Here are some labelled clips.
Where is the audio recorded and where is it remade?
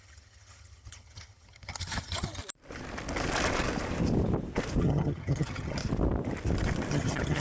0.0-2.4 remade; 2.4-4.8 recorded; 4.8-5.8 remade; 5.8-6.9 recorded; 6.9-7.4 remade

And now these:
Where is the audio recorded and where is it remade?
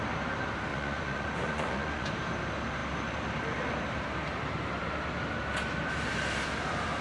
0.0-0.7 recorded; 0.7-2.1 remade; 2.1-7.0 recorded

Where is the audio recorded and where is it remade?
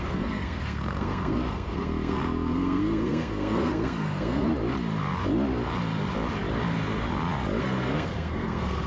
0.0-4.5 remade; 4.5-7.6 recorded; 7.6-8.9 remade